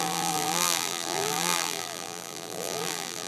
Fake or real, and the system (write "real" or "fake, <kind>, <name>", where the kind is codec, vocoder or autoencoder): fake, vocoder, BigVGAN v2